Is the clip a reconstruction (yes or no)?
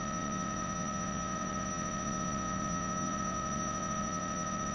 yes